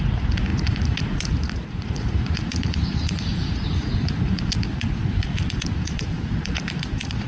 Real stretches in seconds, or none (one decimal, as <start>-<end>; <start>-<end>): none

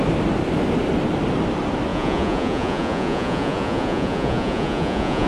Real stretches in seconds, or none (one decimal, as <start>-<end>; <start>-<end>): 0.0-1.9

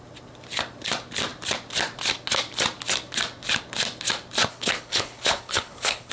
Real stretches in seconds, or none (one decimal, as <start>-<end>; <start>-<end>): 0.0-4.5

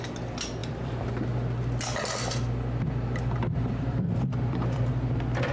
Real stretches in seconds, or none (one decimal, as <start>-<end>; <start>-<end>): 0.0-0.6; 1.1-3.4; 4.9-5.5